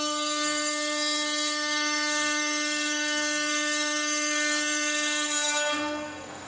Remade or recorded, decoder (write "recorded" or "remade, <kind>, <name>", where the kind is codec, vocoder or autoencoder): remade, codec, SNAC